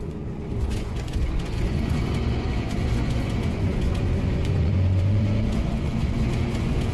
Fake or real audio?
fake